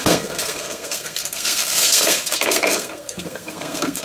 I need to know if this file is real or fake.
fake